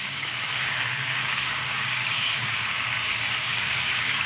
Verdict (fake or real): fake